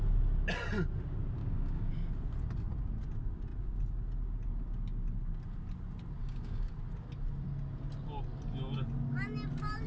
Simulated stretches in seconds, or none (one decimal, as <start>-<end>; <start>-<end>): 1.4-1.9; 6.2-6.7